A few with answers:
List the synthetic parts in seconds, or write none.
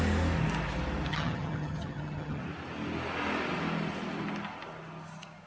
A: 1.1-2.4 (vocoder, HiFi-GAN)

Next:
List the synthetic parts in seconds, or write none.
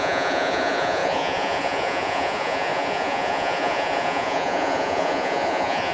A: 0.0-5.9 (vocoder, Vocos)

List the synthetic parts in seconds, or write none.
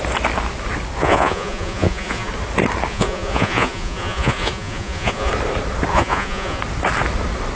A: 1.0-2.3 (vocoder, Vocos); 2.9-5.3; 5.9-6.6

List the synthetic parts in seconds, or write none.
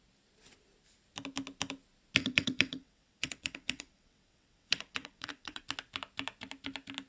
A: 2.2-5.6 (vocoder, WaveNeXt)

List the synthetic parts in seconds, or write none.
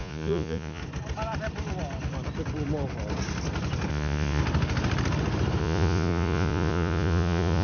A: 0.0-0.8 (vocoder, Vocos); 3.9-4.4; 5.6-7.6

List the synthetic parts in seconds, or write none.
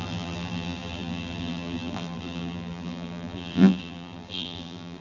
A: 0.0-5.0 (vocoder, BigVGAN v2)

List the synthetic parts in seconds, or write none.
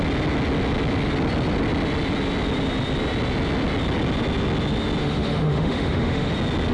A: 5.0-6.3 (autoencoder, DAC-VAE)